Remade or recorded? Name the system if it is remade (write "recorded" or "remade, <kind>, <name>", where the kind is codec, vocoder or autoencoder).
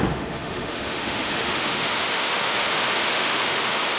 remade, autoencoder, DAC-VAE